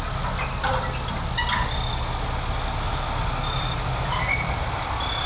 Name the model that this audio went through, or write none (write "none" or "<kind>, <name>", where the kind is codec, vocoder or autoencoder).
none